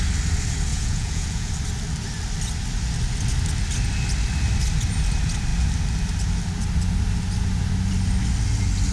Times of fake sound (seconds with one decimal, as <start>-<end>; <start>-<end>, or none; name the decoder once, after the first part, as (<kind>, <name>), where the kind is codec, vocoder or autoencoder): 0.7-1.5 (vocoder, Vocos)